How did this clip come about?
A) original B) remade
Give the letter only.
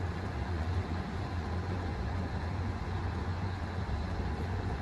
B